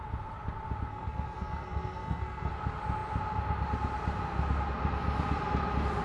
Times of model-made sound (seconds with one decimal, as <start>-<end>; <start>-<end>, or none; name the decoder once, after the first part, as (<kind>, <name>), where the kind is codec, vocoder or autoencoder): 0.9-2.5 (codec, SNAC)